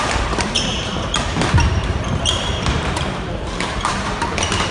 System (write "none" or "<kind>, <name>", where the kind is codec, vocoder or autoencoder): vocoder, BigVGAN v2